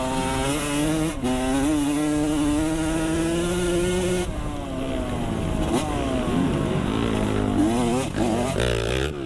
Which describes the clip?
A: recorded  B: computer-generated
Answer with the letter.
A